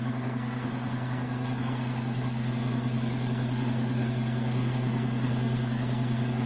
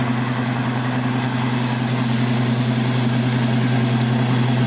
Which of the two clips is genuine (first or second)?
second